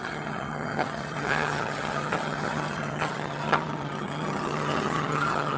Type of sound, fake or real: fake